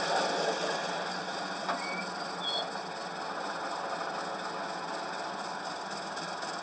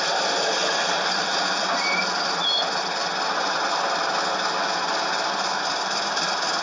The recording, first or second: first